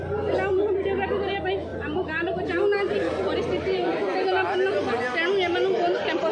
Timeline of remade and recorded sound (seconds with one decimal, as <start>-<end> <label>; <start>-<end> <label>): 0.0-1.7 recorded; 1.7-4.0 remade; 4.0-6.3 recorded